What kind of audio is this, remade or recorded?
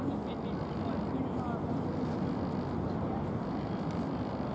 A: recorded